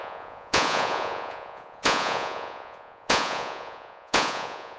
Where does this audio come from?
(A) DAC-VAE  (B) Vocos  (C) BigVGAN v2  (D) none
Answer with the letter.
B